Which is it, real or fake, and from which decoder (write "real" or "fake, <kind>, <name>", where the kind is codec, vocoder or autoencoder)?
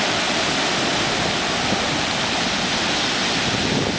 real